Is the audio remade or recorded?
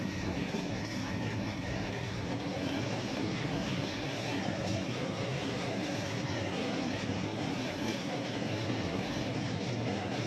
remade